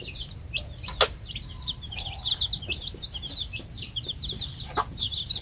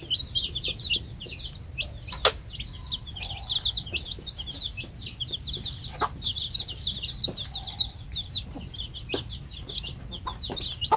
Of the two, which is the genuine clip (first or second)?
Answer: second